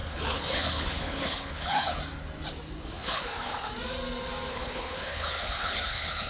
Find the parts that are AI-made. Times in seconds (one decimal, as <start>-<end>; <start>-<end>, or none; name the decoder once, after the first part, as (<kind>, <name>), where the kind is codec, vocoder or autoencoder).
0.0-2.0 (codec, HILCodec); 2.8-3.7; 4.5-6.3